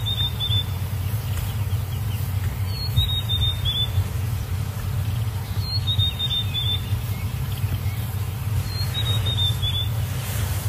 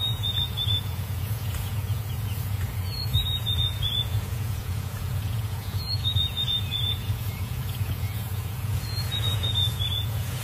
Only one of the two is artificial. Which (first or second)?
second